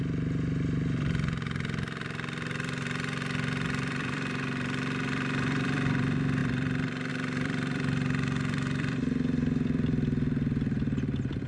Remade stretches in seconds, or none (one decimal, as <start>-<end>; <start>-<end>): 0.0-11.5